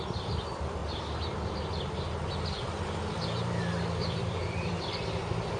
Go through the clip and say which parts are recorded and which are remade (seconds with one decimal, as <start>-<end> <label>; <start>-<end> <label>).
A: 0.0-0.8 remade; 0.8-4.0 recorded; 4.0-5.6 remade